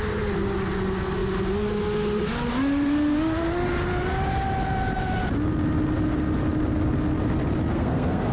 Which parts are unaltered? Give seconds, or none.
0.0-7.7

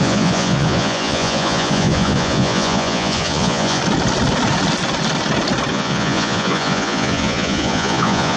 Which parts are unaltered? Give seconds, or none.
3.8-5.7

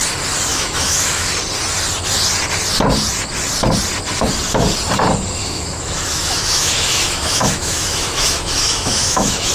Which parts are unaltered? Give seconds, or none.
0.0-0.5; 1.3-5.4

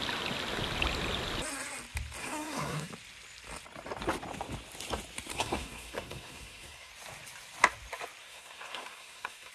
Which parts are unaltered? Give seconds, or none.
0.0-2.2; 2.9-5.3; 6.9-8.2

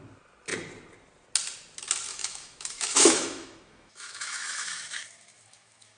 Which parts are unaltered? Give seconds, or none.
0.0-2.1

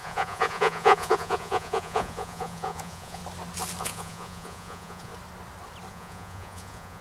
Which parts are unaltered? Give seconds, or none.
3.2-3.8; 5.1-5.9